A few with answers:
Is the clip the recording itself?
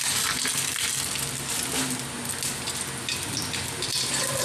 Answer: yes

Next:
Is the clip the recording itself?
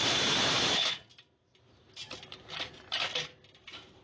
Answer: yes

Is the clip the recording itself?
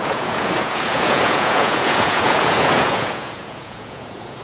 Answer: no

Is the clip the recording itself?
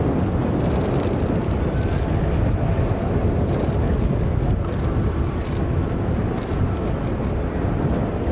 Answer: yes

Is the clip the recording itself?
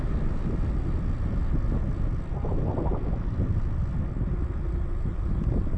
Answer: yes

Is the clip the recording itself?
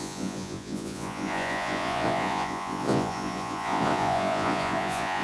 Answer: no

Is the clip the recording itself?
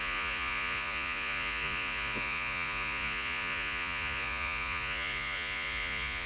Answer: no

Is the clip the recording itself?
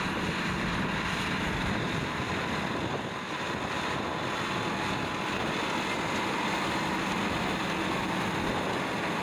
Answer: yes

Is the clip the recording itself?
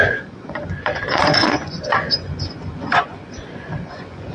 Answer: no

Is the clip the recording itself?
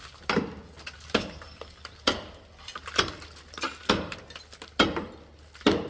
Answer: yes